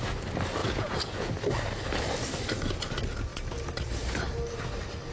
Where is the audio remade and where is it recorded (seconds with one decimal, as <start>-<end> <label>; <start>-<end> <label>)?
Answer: 0.0-0.6 recorded; 0.6-1.3 remade; 1.3-5.1 recorded

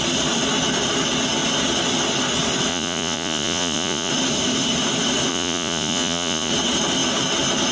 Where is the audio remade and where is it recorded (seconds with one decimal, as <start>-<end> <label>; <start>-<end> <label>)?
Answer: 0.0-2.7 recorded; 2.7-4.1 remade; 4.1-5.3 recorded; 5.3-6.5 remade; 6.5-7.7 recorded